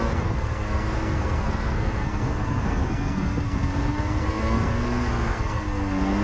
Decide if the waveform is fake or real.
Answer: fake